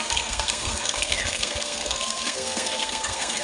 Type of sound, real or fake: fake